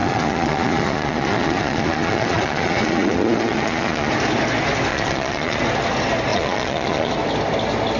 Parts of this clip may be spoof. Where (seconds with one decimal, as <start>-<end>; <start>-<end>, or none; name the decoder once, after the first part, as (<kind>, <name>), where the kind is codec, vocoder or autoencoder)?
0.0-4.1 (vocoder, Vocos); 4.9-5.6; 6.3-7.1

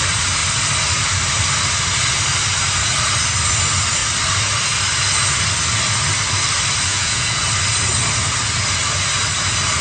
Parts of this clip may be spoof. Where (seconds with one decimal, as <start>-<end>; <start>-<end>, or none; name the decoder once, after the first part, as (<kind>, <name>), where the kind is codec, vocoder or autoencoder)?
6.9-7.4 (vocoder, Vocos)

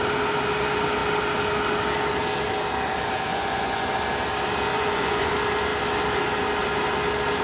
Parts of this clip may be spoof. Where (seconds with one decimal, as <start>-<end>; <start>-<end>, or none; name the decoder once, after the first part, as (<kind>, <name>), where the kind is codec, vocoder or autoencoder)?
3.3-3.9 (vocoder, Vocos); 4.7-5.3

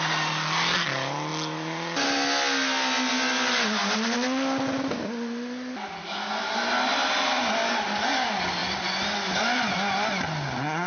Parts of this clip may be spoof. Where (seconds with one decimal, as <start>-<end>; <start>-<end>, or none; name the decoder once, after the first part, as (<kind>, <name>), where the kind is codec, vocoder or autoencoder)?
none